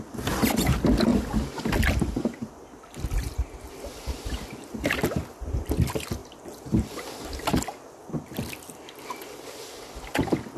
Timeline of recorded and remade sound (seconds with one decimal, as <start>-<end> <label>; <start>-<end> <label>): 0.0-10.6 recorded